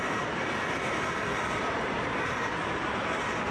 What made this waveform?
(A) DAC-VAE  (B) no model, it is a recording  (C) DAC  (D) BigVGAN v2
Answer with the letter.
D